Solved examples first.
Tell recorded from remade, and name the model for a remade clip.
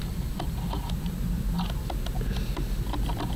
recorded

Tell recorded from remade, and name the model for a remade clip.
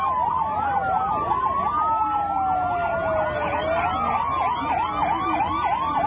recorded